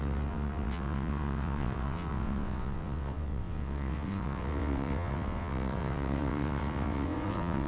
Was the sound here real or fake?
fake